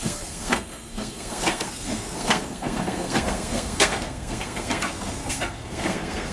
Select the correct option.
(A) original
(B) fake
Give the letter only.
B